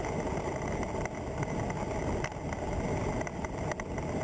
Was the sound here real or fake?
real